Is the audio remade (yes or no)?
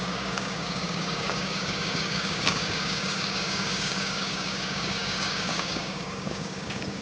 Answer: yes